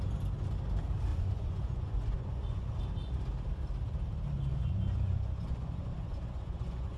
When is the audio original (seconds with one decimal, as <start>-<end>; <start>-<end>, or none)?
0.0-1.1; 2.8-4.5